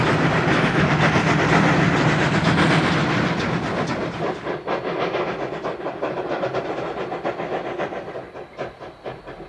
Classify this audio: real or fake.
real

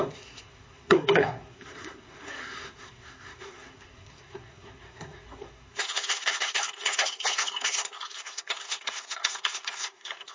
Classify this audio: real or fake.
fake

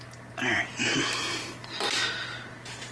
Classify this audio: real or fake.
real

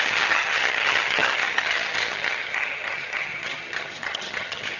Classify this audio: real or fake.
fake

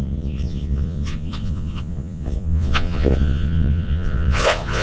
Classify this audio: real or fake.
fake